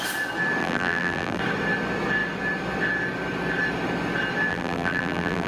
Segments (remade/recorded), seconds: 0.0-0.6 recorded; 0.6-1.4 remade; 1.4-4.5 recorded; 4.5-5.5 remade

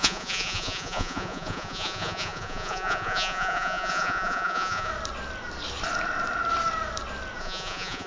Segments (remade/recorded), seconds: 0.0-4.9 remade; 4.9-7.4 recorded; 7.4-8.1 remade